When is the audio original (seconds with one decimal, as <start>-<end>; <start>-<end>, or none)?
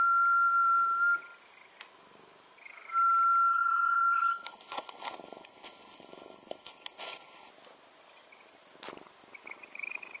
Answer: 0.0-3.5; 7.5-10.2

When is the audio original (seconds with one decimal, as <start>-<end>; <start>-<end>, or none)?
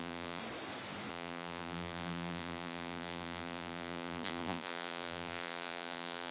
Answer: 0.4-1.1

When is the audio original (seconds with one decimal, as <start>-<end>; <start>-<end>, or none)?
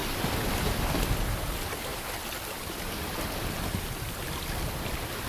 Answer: 0.0-5.3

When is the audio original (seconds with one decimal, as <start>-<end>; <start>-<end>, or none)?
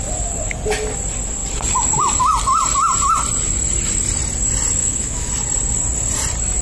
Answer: 0.0-4.8; 5.3-6.6